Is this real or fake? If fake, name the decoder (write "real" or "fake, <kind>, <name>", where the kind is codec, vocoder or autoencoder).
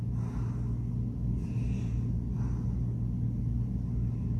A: real